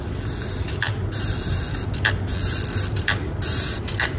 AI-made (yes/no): no